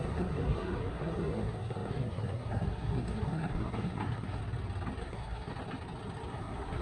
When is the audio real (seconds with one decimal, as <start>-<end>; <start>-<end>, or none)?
4.4-5.0; 5.5-6.3